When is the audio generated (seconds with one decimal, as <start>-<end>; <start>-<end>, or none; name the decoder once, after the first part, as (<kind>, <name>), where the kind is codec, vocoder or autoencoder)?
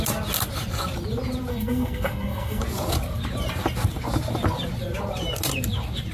1.5-2.6 (codec, SNAC)